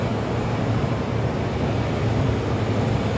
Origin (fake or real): real